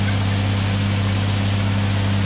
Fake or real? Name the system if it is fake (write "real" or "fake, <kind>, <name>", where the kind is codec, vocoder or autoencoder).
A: real